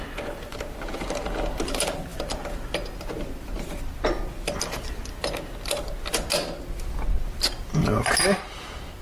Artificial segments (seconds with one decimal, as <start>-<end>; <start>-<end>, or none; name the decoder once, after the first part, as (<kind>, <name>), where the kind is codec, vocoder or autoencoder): none